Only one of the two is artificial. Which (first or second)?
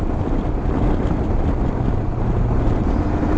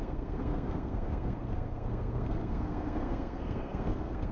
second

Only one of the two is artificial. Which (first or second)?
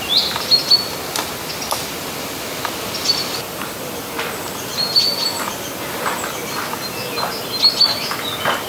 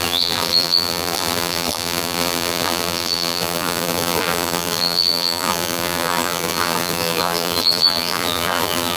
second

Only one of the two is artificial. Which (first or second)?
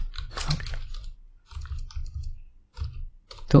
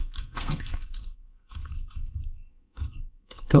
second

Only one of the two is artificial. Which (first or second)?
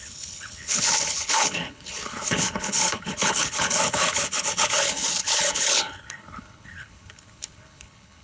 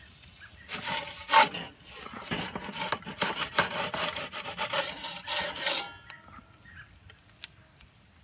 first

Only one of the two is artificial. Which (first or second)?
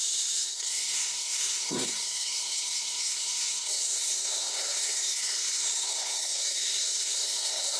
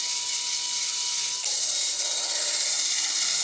first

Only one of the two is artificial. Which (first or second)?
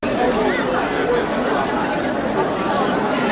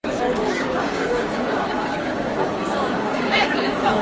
second